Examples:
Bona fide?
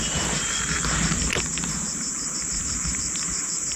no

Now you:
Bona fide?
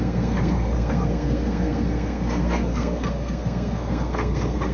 no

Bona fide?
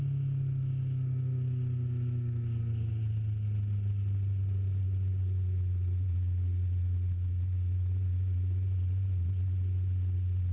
yes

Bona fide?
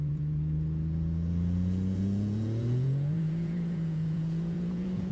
no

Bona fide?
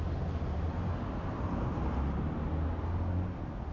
yes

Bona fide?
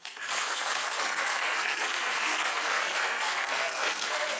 no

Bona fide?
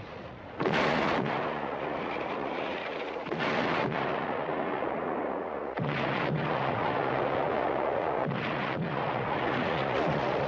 no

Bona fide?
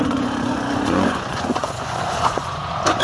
no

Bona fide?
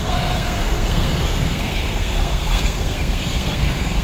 no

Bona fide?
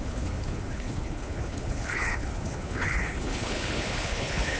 no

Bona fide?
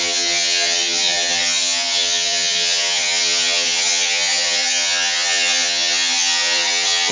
no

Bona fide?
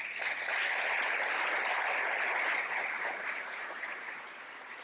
yes